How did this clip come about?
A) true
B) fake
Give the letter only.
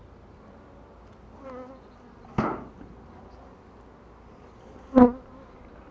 A